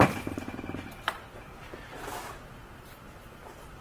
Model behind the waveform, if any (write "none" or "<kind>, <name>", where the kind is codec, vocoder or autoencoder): none